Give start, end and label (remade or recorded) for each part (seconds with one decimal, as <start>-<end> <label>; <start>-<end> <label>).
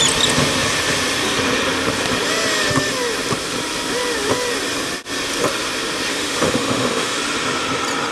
0.0-6.1 recorded; 6.1-7.2 remade; 7.2-8.1 recorded